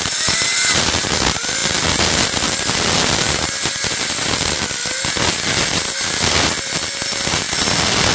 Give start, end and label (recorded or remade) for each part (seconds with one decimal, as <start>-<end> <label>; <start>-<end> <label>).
0.0-8.1 recorded